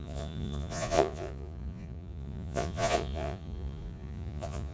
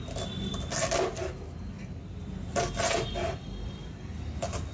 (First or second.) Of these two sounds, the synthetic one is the first